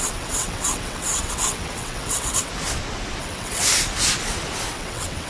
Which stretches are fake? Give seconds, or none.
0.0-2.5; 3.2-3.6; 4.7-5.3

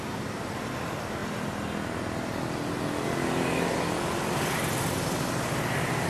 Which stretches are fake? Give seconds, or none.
none

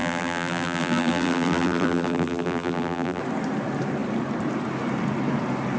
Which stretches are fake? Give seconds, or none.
0.0-3.2

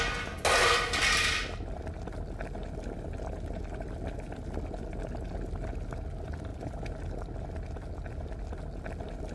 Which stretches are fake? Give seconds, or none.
none